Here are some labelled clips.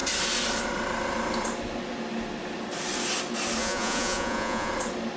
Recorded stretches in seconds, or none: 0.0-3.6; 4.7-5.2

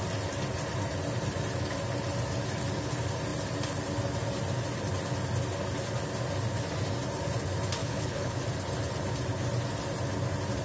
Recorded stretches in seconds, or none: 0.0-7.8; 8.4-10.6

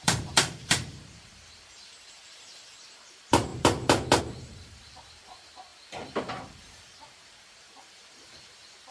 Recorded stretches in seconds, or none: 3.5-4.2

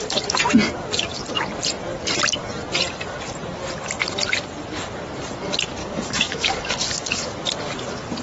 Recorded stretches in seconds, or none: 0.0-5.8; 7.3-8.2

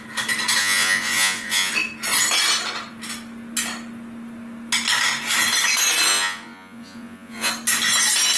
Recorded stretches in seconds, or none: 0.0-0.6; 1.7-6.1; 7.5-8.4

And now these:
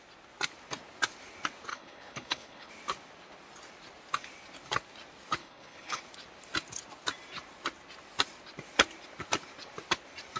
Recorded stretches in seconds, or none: 0.0-1.7; 2.7-5.4; 6.0-10.4